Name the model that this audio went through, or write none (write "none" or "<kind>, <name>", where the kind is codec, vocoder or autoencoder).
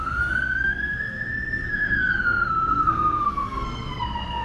codec, SNAC